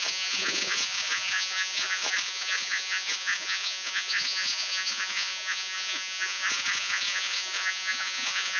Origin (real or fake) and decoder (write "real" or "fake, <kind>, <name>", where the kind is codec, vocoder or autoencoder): fake, vocoder, Vocos